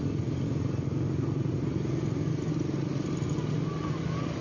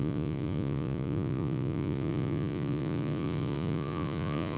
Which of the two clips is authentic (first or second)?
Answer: first